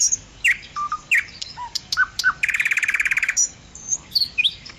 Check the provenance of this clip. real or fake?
fake